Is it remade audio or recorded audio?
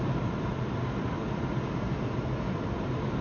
recorded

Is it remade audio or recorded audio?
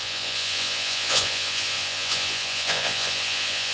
remade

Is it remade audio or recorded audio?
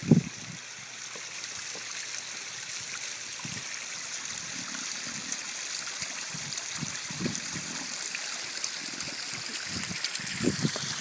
recorded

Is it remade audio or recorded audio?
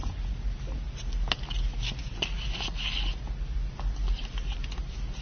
recorded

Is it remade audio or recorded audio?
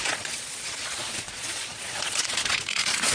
remade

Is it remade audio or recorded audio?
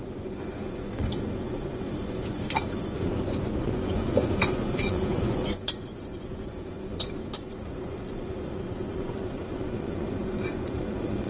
remade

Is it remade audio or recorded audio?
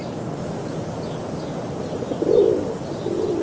recorded